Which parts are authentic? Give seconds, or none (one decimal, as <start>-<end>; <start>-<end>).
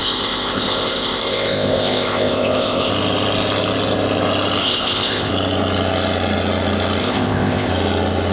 2.9-4.6; 5.3-7.0; 7.7-8.3